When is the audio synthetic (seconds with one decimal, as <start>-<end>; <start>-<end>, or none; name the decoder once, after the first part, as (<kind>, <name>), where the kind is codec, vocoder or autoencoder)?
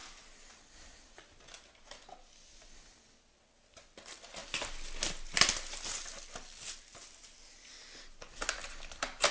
none